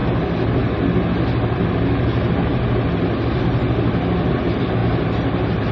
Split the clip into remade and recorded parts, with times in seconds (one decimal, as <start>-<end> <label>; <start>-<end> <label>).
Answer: 0.0-5.7 recorded